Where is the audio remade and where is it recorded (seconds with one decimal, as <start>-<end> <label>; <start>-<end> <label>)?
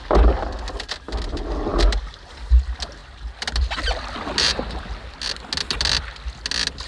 0.0-6.9 recorded